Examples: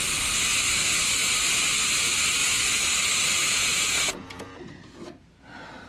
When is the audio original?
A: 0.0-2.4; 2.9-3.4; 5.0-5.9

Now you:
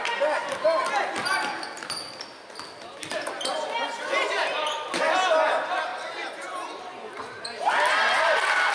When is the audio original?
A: 0.0-8.7